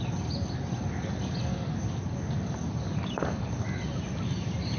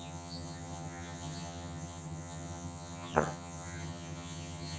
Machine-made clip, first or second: second